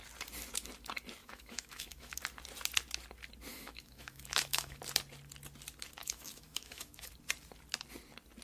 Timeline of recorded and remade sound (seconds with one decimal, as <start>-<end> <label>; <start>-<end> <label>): 0.0-1.2 recorded; 1.2-2.2 remade; 2.2-3.5 recorded; 3.5-4.8 remade; 4.8-6.0 recorded; 6.0-7.1 remade; 7.1-8.4 recorded